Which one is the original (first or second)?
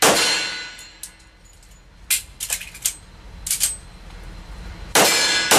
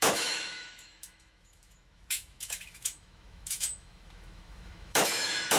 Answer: first